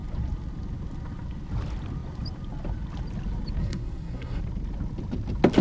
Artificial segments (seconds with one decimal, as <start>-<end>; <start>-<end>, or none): 3.6-4.4